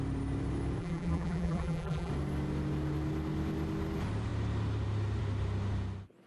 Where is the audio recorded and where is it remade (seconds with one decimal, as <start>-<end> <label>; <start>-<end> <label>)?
0.0-0.8 recorded; 0.8-2.1 remade; 2.1-6.3 recorded